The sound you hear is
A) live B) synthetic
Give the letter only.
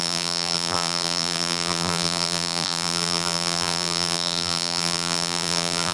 B